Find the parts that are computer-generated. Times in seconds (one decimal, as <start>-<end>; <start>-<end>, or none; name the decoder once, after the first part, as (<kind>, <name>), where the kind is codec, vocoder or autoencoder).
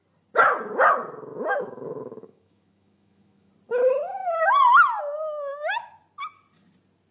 1.3-3.5 (autoencoder, DAC-VAE); 5.5-6.0